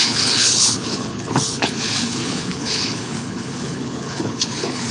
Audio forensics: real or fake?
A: fake